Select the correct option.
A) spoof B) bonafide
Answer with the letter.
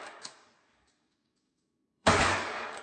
A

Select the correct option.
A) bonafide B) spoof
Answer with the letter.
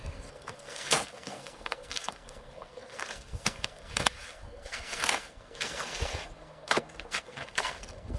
B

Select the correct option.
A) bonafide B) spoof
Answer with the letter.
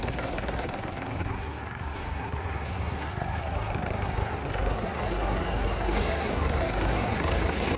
B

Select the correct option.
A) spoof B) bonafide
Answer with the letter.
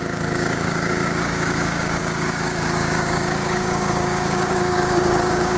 A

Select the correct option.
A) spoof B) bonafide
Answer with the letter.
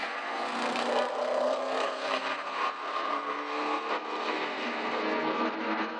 A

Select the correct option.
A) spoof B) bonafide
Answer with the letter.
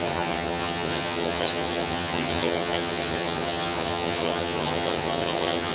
A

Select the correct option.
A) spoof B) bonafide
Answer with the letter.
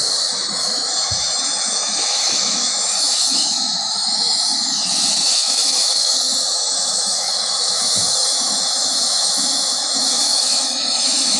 A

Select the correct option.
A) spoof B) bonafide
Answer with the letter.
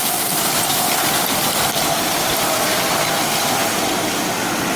B